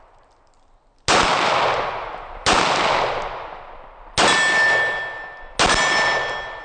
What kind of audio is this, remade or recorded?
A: recorded